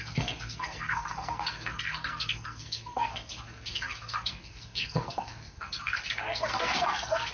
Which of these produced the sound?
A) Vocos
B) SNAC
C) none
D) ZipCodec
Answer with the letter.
B